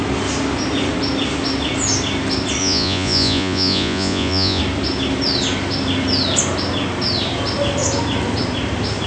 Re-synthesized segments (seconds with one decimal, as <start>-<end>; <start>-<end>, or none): 2.6-4.6